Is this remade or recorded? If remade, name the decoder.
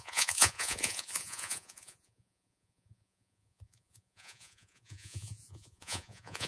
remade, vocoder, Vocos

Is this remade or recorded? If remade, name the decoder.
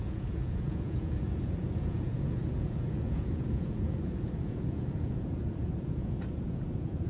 remade, vocoder, Vocos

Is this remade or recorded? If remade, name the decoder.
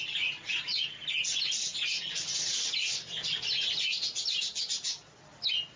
recorded